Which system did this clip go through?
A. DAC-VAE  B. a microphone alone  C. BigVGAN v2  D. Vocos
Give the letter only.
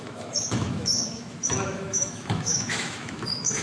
A